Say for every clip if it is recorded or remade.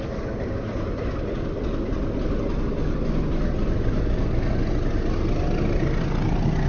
recorded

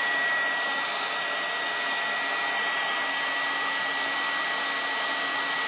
recorded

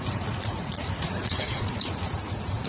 remade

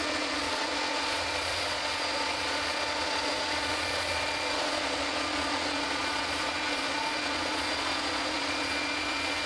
remade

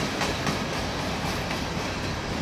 recorded